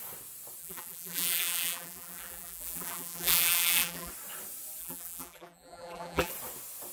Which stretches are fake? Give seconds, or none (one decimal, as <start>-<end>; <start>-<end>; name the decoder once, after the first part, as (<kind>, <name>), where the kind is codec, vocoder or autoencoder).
0.6-4.1 (vocoder, BigVGAN v2); 4.8-6.3